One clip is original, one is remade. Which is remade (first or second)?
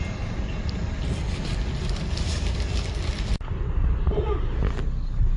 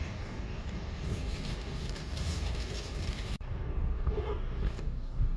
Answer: second